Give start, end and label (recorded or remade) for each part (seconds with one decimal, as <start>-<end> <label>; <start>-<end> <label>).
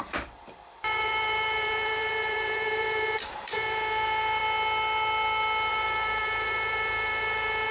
0.0-4.4 remade; 4.4-5.7 recorded; 5.7-7.7 remade